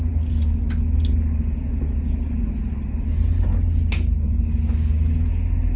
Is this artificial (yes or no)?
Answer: no